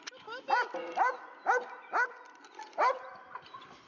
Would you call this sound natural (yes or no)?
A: yes